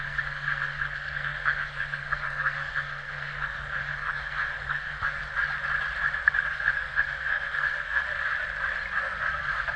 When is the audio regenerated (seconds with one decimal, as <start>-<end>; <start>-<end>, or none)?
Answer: 0.0-5.2; 6.4-8.1; 9.0-9.8